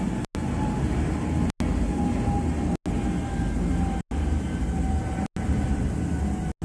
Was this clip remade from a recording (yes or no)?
no